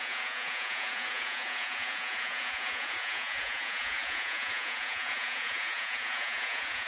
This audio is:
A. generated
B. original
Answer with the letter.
A